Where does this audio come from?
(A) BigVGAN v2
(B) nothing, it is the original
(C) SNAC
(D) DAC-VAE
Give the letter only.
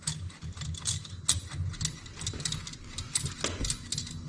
B